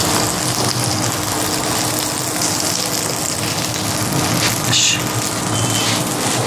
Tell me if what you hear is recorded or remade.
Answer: recorded